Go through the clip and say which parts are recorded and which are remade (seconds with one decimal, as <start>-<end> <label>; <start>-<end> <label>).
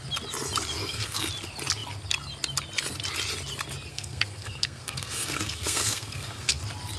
0.0-0.8 recorded; 0.8-1.3 remade; 1.3-3.9 recorded; 3.9-6.6 remade; 6.6-7.0 recorded